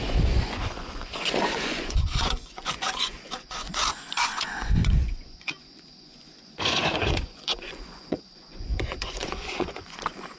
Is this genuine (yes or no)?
no